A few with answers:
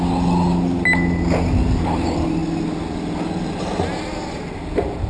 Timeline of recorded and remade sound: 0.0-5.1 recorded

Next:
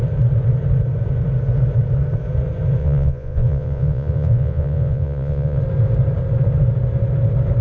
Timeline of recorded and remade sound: 0.0-2.8 recorded; 2.8-5.6 remade; 5.6-7.6 recorded

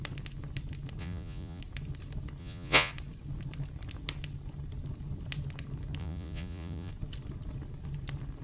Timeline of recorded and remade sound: 0.0-1.0 recorded; 1.0-1.6 remade; 1.6-2.4 recorded; 2.4-2.9 remade; 2.9-6.0 recorded; 6.0-6.9 remade; 6.9-8.4 recorded

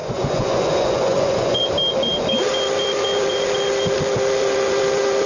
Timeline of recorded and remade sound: 0.0-1.6 remade; 1.6-5.3 recorded

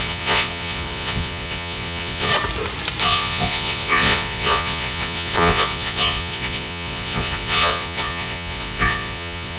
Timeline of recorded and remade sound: 0.0-2.3 remade; 2.3-3.0 recorded; 3.0-9.6 remade

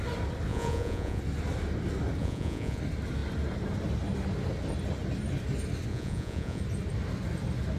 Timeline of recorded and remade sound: 0.0-0.5 recorded; 0.5-1.2 remade; 1.2-2.2 recorded; 2.2-2.8 remade; 2.8-5.9 recorded; 5.9-6.6 remade; 6.6-7.8 recorded

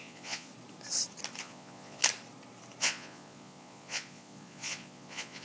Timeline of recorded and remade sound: 0.0-0.5 remade; 0.5-1.4 recorded; 1.4-2.0 remade; 2.0-2.8 recorded; 2.8-5.4 remade

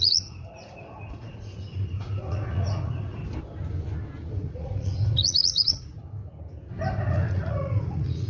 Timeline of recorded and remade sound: 0.0-3.2 remade; 3.2-4.3 recorded; 4.3-6.0 remade; 6.0-7.1 recorded; 7.1-8.3 remade